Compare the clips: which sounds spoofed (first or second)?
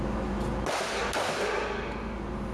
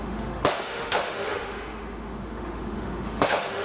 second